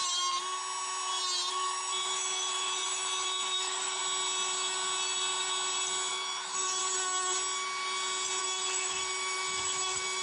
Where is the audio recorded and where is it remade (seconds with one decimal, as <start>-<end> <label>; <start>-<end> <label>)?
0.0-1.5 recorded; 1.5-4.0 remade; 4.0-6.1 recorded; 6.1-6.8 remade; 6.8-8.4 recorded; 8.4-10.2 remade